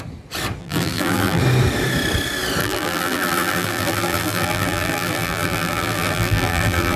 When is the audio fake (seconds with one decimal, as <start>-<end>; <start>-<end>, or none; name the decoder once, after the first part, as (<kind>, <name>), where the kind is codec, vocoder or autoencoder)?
0.6-1.4 (vocoder, BigVGAN v2); 2.6-7.0